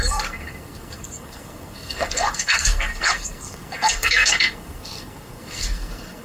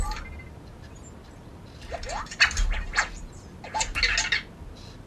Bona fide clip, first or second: second